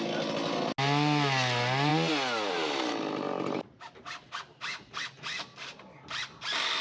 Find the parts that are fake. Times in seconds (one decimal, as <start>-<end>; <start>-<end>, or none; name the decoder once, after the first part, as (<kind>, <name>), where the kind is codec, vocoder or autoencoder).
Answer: none